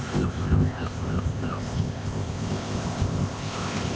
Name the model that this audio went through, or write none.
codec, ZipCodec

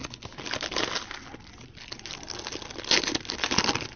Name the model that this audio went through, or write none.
none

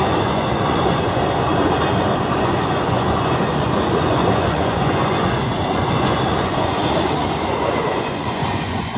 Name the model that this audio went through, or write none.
vocoder, Vocos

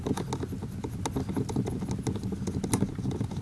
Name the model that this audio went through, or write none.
none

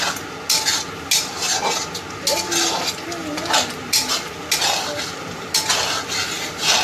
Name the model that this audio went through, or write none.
none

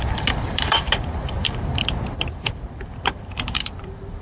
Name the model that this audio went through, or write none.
vocoder, BigVGAN v2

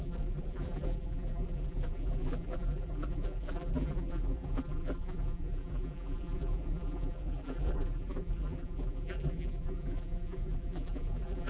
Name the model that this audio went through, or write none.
vocoder, BigVGAN v2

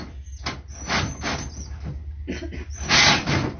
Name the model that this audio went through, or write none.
none